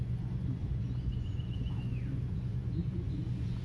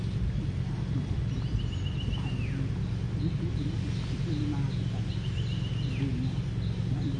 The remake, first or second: first